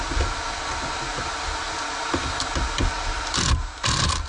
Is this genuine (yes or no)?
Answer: yes